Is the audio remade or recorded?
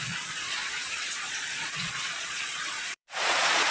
remade